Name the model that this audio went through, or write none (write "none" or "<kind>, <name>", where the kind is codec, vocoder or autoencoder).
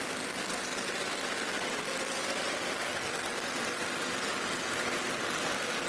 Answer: none